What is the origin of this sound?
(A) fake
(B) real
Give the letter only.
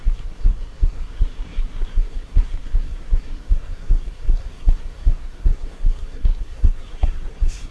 A